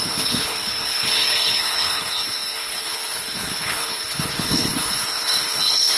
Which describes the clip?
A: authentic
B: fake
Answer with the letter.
B